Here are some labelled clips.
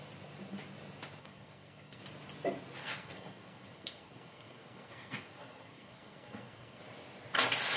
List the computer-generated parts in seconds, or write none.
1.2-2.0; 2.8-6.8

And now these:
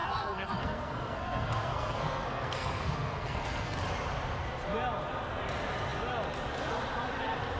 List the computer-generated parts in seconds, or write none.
0.0-3.8

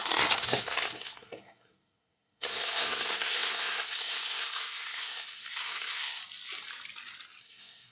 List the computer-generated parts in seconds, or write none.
0.0-6.2; 7.4-7.9

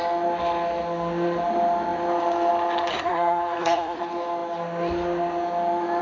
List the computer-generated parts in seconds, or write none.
2.9-4.0

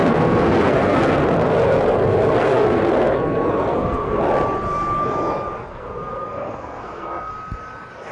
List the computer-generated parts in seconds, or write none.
0.0-4.2; 5.7-7.3

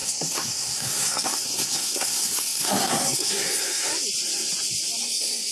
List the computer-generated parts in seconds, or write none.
0.0-3.9; 5.0-5.5

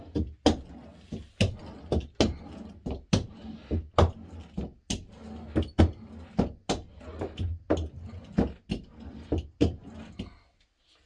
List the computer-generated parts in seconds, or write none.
none